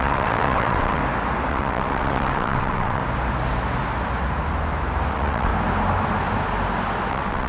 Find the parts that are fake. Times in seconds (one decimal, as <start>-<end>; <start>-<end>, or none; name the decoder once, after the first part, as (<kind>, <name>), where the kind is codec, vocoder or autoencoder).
0.0-1.0 (vocoder, WaveNeXt); 1.5-3.0; 5.1-5.5; 7.1-7.5